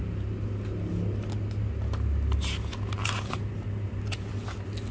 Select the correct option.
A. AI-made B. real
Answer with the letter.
B